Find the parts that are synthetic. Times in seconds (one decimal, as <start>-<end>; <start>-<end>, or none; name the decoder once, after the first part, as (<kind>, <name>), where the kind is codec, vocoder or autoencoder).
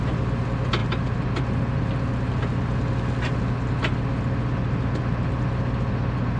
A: none